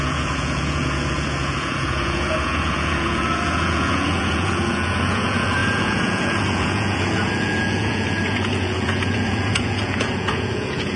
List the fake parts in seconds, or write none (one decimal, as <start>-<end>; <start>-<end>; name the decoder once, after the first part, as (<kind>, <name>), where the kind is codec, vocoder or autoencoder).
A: 0.0-11.0 (vocoder, Vocos)